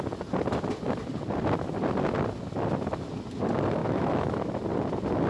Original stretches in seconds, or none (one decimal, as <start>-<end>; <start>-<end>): 0.0-3.8; 4.6-5.3